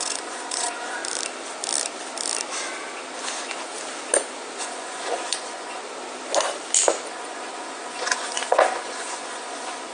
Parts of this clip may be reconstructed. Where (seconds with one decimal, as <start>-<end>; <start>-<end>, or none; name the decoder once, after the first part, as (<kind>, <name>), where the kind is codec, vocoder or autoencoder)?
0.0-1.0 (vocoder, Vocos); 4.6-5.8; 7.1-9.9